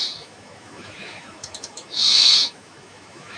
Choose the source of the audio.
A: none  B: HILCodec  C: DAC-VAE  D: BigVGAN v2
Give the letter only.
C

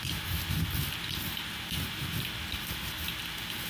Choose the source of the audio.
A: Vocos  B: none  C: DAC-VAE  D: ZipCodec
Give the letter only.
B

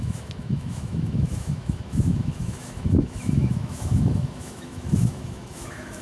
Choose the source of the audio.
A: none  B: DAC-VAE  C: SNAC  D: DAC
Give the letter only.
B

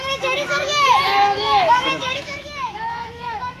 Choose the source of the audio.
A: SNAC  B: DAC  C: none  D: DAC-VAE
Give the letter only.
D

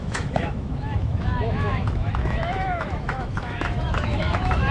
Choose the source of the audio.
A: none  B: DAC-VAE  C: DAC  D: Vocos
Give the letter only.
B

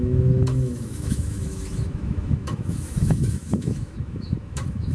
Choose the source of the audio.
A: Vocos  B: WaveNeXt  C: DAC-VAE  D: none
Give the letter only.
C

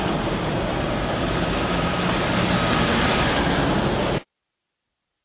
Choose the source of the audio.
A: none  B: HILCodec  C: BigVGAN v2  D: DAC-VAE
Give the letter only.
A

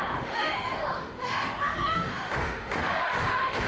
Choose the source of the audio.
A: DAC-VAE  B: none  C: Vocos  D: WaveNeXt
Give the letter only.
A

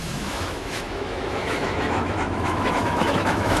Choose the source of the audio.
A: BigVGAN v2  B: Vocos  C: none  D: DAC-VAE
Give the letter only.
D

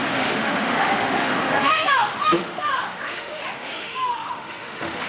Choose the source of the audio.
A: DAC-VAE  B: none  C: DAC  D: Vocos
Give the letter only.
A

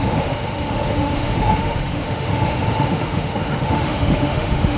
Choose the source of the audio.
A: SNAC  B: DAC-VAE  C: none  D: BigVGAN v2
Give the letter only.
B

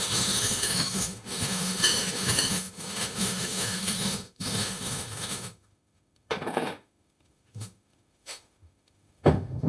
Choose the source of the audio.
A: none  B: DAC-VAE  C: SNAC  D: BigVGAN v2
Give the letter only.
B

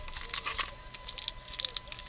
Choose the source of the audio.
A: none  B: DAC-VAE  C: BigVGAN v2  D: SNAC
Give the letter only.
A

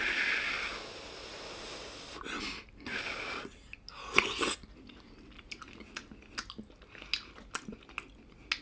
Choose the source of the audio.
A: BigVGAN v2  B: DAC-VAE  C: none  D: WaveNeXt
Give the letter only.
C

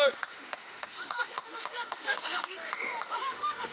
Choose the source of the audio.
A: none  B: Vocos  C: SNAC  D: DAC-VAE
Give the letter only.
D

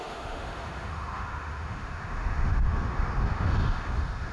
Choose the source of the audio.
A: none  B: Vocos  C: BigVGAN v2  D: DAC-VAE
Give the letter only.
D